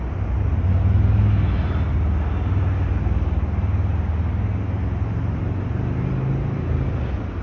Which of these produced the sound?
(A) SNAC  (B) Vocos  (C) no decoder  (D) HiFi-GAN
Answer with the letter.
C